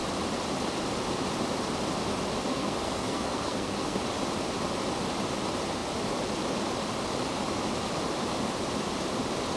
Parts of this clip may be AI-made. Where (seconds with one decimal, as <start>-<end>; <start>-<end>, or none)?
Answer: 2.5-4.0